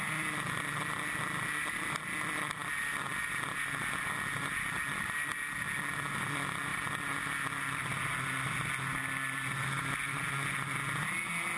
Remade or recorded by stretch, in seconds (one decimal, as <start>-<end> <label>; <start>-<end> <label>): 0.0-11.6 recorded